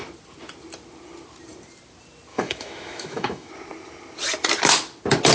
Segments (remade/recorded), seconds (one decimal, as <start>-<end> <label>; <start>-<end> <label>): 0.0-2.3 recorded; 2.3-3.5 remade; 3.5-5.3 recorded